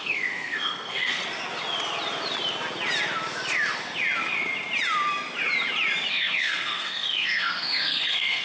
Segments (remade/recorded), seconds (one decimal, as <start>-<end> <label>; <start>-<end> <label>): 0.0-1.2 remade; 1.2-6.1 recorded; 6.1-8.4 remade